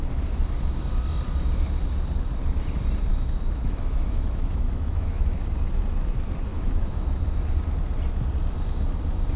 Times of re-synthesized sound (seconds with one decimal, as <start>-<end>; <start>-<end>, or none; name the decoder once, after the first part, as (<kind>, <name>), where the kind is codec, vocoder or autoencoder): 3.1-5.5 (autoencoder, DAC-VAE); 6.5-7.2